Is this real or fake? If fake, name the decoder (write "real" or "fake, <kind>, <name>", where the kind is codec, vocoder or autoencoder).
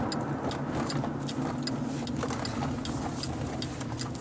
real